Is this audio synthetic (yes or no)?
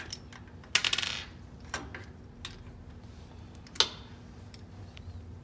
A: no